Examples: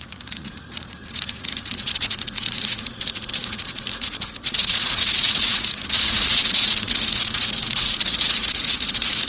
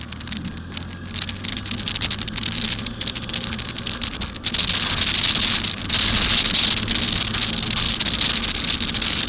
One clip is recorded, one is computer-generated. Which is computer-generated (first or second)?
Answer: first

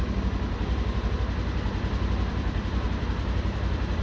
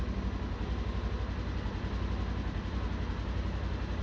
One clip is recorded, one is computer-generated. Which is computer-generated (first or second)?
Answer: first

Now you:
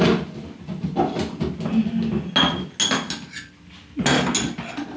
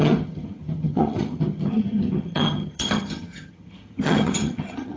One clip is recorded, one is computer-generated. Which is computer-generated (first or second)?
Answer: second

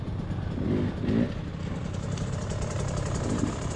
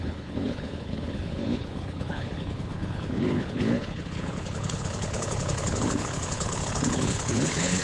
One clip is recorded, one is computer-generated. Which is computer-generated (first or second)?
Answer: second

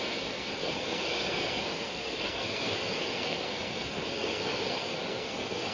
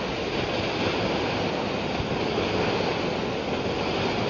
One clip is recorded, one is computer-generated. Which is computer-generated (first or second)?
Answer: first